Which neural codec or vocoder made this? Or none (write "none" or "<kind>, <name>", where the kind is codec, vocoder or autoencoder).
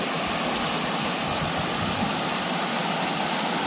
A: none